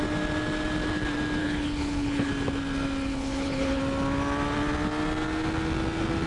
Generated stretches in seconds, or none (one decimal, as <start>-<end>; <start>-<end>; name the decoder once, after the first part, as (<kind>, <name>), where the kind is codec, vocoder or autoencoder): 1.4-2.3 (codec, HILCodec); 3.1-3.8